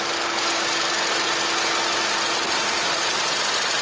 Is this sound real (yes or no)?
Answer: yes